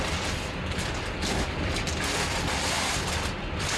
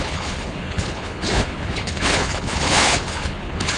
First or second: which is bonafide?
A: first